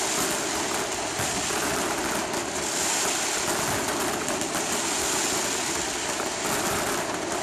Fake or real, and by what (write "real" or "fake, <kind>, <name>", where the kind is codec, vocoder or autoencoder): real